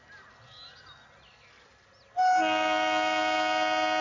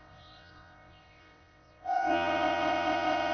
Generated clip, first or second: second